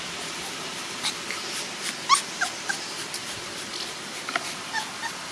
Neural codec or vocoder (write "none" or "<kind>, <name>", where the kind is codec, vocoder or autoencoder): none